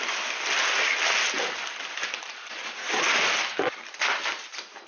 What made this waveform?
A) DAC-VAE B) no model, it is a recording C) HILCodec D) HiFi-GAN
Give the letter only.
B